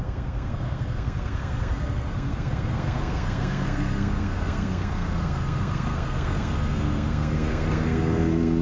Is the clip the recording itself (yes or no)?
no